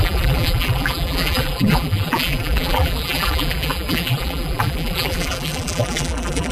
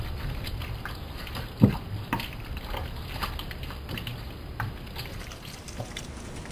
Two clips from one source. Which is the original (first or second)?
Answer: second